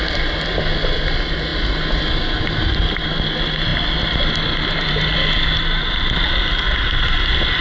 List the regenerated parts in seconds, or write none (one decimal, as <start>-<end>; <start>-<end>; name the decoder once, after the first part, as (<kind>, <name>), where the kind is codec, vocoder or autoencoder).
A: none